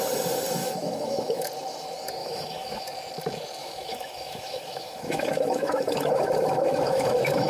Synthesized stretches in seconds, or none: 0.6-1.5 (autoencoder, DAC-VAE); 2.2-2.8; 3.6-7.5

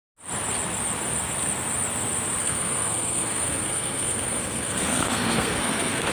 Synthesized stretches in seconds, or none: 2.4-6.1 (codec, SNAC)

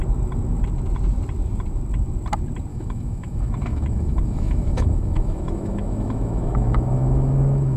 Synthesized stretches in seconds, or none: 2.7-7.8 (autoencoder, DAC-VAE)

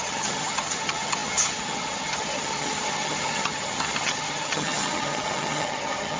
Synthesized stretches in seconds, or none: 0.0-6.2 (vocoder, HiFi-GAN)

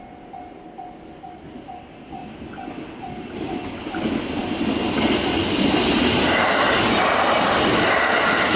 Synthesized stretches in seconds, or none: none